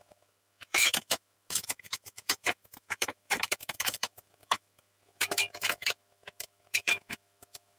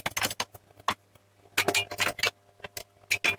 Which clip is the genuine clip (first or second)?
second